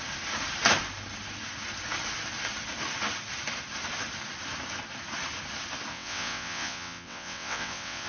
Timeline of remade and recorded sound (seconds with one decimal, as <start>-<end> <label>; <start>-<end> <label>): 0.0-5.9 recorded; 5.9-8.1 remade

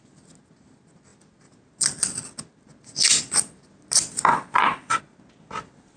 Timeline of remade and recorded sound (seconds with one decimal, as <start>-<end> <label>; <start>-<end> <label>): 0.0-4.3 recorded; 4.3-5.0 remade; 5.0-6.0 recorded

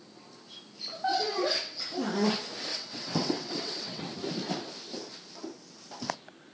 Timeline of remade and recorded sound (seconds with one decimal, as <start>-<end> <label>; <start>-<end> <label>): 0.0-1.1 recorded; 1.1-1.8 remade; 1.8-2.7 recorded; 2.7-4.0 remade; 4.0-6.5 recorded

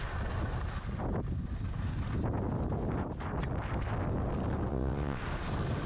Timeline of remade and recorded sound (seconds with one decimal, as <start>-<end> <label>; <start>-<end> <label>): 0.0-4.7 recorded; 4.7-5.2 remade; 5.2-5.9 recorded

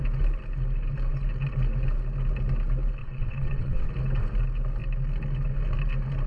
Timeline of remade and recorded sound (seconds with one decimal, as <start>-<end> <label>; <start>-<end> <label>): 0.0-3.0 recorded; 3.0-3.9 remade; 3.9-6.3 recorded

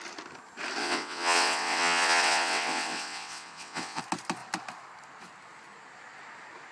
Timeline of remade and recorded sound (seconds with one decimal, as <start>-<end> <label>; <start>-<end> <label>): 0.0-0.8 recorded; 0.8-4.0 remade; 4.0-6.7 recorded

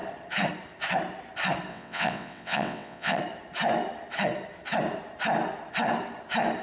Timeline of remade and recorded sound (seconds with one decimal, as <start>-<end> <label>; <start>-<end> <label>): 0.0-1.7 recorded; 1.7-3.2 remade; 3.2-6.6 recorded